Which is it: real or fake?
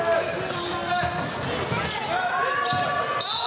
real